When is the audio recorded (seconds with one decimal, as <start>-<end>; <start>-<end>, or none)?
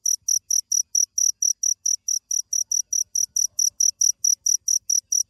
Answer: 0.0-5.3